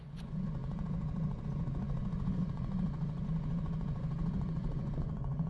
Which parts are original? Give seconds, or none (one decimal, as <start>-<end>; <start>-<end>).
none